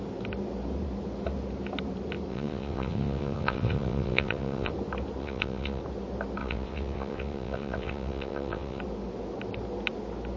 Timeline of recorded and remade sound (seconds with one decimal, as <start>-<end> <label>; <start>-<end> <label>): 0.0-2.3 recorded; 2.3-4.7 remade; 4.7-5.2 recorded; 5.2-5.8 remade; 5.8-6.4 recorded; 6.4-8.8 remade; 8.8-10.4 recorded